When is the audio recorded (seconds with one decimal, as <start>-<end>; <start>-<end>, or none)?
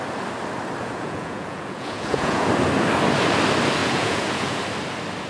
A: 0.0-0.8; 2.5-3.8; 4.6-5.3